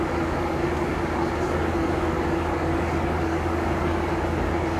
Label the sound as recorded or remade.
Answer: remade